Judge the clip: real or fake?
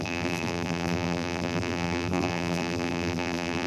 fake